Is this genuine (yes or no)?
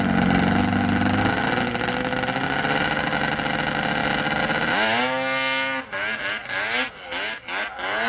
yes